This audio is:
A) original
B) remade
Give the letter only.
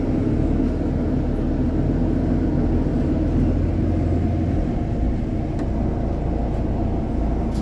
A